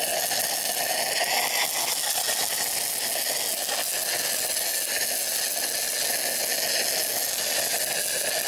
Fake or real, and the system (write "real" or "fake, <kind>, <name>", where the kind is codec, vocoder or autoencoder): real